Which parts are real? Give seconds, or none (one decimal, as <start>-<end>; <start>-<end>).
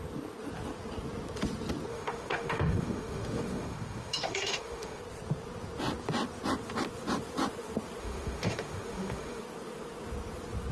0.0-1.9; 5.0-8.0; 9.4-10.7